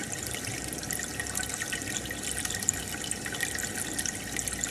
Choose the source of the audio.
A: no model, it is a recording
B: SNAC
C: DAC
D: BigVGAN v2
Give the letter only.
A